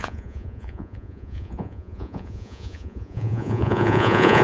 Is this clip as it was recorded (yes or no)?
no